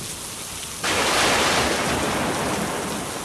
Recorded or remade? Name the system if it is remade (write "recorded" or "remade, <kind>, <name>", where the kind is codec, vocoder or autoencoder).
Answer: recorded